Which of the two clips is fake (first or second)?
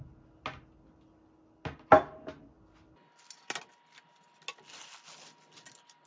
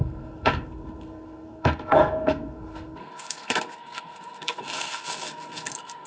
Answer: second